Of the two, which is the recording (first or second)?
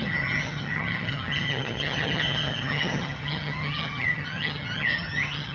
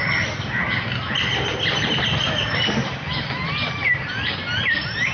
second